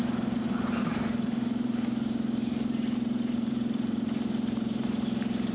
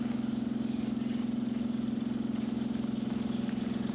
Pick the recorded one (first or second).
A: second